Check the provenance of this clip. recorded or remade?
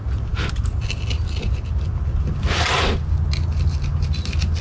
recorded